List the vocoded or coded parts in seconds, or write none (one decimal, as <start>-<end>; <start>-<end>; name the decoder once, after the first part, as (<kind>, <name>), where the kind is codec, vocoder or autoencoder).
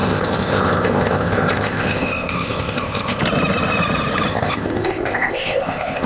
0.0-3.2 (codec, ZipCodec); 4.3-6.1